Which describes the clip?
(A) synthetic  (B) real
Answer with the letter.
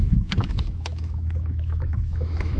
A